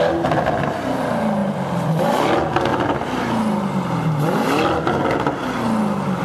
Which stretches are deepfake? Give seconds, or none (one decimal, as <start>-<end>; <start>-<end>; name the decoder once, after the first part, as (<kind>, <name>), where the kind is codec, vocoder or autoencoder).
1.4-2.2 (vocoder, BigVGAN v2)